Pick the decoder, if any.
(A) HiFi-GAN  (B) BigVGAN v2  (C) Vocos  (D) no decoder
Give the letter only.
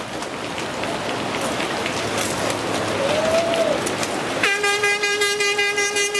D